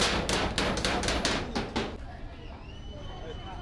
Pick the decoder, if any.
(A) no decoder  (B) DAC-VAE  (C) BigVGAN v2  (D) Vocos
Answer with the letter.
A